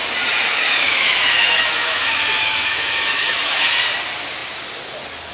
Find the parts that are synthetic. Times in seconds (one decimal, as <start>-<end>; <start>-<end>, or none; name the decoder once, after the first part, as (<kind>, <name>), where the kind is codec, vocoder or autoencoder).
0.5-3.7 (autoencoder, DAC-VAE)